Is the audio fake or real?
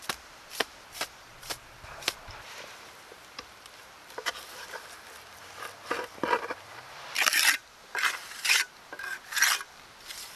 fake